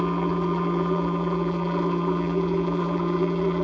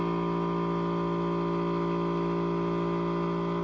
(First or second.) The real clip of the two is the second